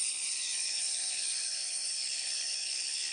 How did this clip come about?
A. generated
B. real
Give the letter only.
A